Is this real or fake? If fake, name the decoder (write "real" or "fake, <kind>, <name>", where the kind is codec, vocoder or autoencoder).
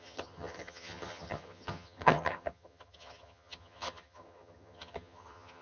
fake, vocoder, HiFi-GAN